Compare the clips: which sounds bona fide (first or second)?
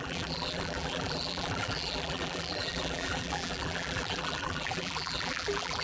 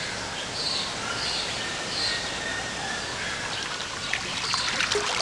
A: second